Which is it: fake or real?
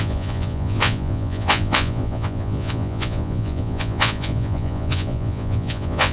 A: fake